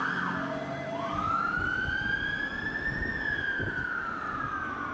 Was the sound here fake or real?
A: real